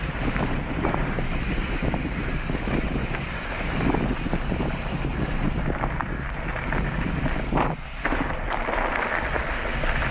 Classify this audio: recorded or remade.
recorded